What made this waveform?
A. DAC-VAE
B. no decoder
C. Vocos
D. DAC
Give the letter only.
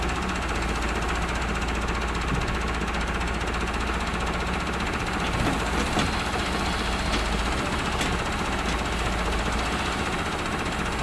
B